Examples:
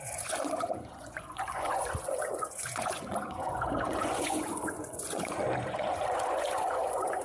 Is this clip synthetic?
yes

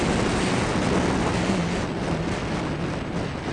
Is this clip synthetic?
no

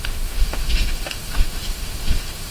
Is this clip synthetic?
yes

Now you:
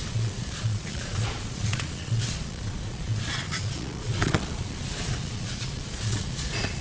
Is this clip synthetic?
yes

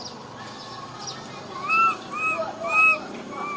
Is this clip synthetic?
no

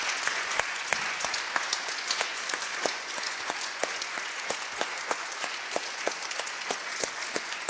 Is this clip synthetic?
yes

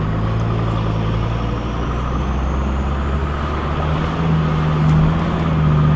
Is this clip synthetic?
no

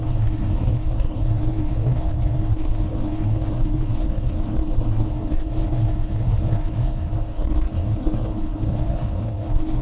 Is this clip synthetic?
yes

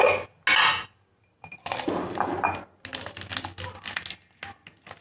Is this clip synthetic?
no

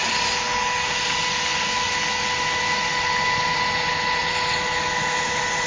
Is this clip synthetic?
no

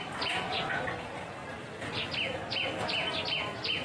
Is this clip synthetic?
no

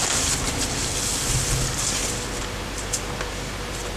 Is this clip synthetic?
no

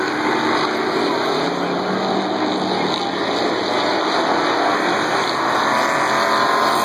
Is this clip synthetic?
no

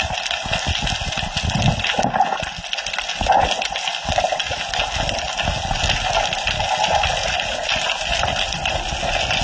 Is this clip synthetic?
no